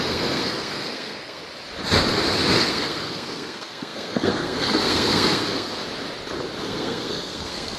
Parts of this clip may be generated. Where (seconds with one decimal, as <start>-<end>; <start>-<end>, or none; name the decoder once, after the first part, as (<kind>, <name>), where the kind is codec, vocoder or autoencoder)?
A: 0.0-1.4 (codec, SNAC); 2.7-5.8; 6.6-7.8

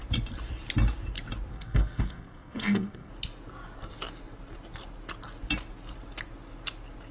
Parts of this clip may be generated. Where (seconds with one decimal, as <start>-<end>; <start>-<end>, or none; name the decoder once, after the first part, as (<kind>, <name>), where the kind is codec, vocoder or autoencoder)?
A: 1.5-3.1 (codec, SNAC)